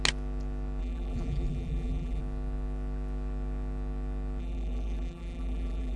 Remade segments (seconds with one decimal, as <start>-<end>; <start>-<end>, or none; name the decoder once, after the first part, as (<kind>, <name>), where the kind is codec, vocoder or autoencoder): 0.8-2.2 (vocoder, BigVGAN v2); 4.4-6.0